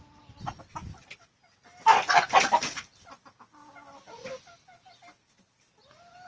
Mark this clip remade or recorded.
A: recorded